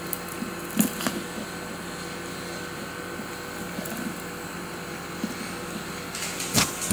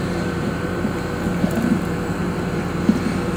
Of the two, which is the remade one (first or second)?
second